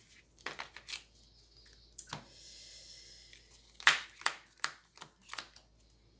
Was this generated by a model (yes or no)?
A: no